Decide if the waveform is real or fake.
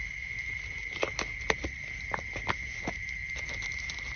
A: real